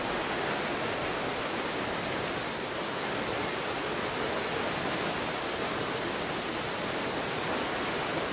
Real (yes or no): yes